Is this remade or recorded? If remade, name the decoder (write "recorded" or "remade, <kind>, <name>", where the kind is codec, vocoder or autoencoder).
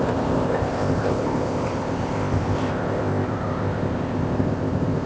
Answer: remade, codec, ZipCodec